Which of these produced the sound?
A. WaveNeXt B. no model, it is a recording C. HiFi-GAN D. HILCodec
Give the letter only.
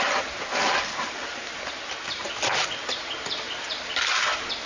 B